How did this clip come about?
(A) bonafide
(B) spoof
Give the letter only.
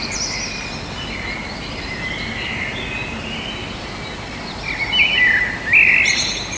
A